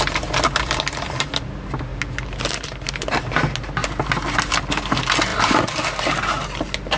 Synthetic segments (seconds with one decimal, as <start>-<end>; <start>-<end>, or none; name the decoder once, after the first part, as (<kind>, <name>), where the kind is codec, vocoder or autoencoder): 1.9-2.9 (vocoder, BigVGAN v2)